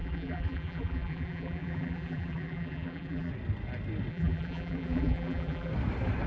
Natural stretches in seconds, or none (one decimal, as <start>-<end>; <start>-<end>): 3.3-4.1; 5.7-6.3